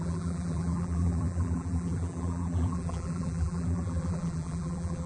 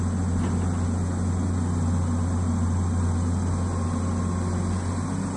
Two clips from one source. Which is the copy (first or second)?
first